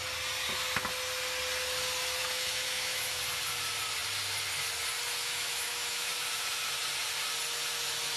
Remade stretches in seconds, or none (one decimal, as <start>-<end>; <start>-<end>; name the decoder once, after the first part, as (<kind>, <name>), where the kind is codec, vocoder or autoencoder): 2.2-3.2 (autoencoder, DAC-VAE); 5.2-6.1